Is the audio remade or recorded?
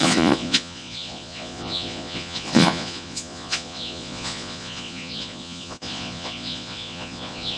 remade